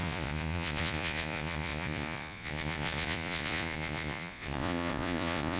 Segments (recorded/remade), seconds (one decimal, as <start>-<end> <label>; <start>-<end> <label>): 0.0-5.6 remade